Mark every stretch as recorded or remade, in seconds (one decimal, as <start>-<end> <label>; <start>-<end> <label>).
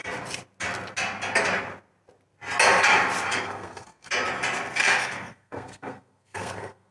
0.0-3.3 recorded; 3.3-4.1 remade; 4.1-4.8 recorded; 4.8-6.9 remade